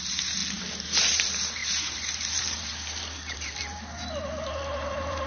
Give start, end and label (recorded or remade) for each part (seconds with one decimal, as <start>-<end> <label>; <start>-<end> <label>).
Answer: 0.0-0.4 remade; 0.4-1.0 recorded; 1.0-5.3 remade